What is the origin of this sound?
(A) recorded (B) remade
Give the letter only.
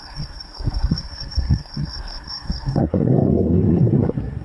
B